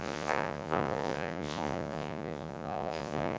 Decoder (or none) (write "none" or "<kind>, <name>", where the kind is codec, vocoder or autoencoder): vocoder, Vocos